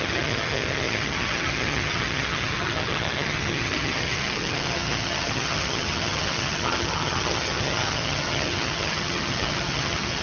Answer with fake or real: fake